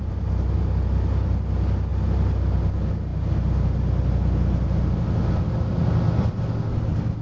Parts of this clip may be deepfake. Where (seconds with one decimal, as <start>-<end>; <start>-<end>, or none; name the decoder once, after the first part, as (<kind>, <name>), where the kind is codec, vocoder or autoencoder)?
none